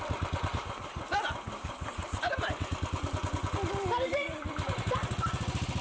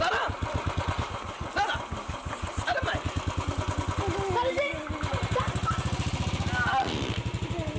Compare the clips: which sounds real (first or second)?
second